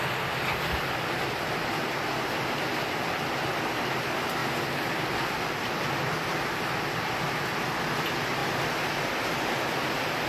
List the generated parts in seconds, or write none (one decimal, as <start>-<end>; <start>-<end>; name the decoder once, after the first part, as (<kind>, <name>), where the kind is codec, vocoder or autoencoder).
none